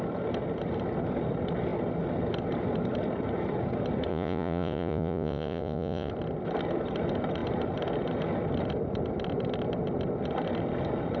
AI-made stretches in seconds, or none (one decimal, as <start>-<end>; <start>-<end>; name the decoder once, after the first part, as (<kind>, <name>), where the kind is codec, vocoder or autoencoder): 4.1-6.1 (vocoder, Vocos)